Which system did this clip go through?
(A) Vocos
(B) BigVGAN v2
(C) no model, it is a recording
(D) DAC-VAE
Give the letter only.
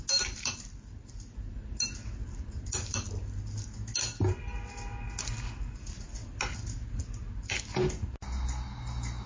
C